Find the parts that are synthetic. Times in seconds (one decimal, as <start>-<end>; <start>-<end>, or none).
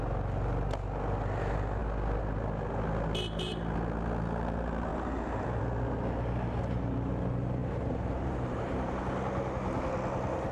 4.9-5.6; 7.6-9.0